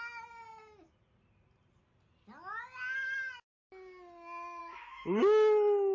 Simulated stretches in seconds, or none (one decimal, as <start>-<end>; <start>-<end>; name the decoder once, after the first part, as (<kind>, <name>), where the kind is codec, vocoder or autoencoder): 4.6-5.2 (autoencoder, DAC-VAE)